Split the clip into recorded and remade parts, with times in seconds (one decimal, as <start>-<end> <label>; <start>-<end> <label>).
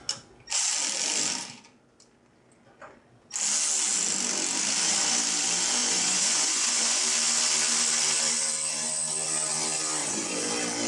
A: 0.0-5.8 recorded; 5.8-7.0 remade; 7.0-10.0 recorded; 10.0-10.5 remade; 10.5-10.9 recorded